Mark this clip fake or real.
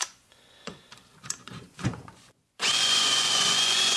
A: fake